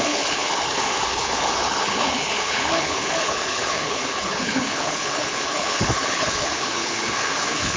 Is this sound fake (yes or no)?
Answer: yes